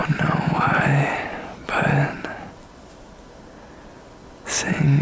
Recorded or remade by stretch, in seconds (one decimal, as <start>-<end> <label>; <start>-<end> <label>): 0.0-5.0 recorded